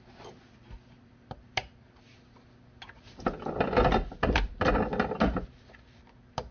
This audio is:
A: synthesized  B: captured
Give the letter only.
B